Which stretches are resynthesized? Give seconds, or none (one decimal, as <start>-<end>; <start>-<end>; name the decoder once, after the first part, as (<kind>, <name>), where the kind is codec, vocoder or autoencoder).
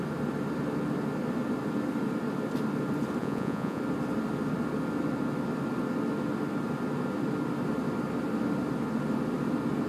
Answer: 3.2-3.8 (vocoder, Vocos)